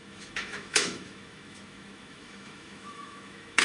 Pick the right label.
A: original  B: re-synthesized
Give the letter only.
B